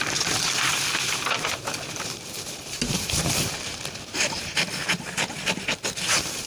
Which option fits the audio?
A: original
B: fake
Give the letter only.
B